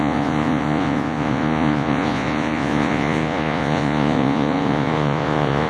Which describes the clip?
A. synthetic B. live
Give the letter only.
A